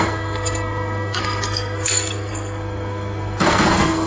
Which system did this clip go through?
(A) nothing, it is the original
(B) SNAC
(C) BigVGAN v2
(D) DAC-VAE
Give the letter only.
B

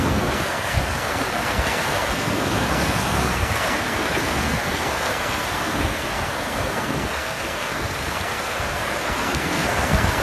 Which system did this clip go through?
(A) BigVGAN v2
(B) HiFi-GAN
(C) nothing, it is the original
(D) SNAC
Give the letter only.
D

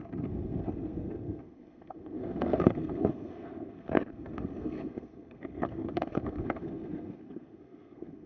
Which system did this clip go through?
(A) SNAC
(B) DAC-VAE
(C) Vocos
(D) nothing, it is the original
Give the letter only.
A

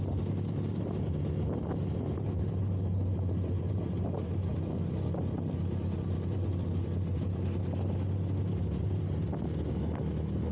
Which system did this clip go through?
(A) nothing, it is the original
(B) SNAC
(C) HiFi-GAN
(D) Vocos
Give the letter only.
A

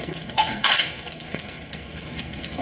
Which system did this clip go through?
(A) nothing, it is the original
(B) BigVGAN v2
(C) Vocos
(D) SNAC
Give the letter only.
D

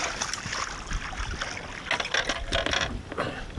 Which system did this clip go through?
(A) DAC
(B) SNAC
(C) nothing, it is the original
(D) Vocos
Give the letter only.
C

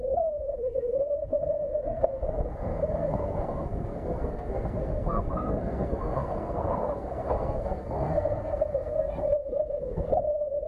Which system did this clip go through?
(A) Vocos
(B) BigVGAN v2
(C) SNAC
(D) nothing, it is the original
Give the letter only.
C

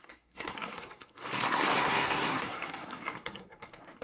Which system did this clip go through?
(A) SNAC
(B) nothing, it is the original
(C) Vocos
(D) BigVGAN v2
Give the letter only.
A